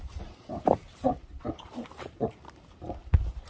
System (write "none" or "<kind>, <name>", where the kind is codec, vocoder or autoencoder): vocoder, BigVGAN v2